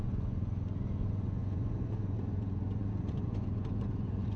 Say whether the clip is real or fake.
fake